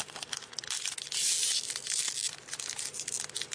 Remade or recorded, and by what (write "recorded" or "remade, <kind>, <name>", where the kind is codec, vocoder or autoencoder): recorded